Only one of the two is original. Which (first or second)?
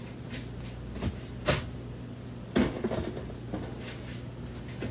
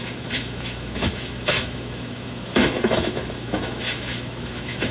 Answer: first